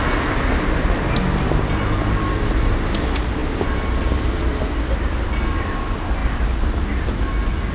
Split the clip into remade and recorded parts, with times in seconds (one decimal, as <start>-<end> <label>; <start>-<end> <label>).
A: 0.0-7.7 recorded